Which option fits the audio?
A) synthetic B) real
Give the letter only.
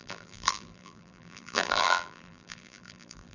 A